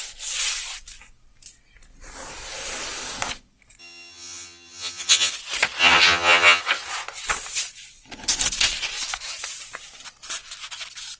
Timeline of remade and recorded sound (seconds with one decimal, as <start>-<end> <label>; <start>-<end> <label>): 0.0-3.8 recorded; 3.8-5.3 remade; 5.3-5.8 recorded; 5.8-6.6 remade; 6.6-11.2 recorded